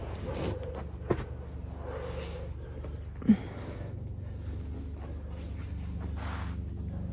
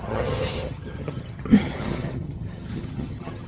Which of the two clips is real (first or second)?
first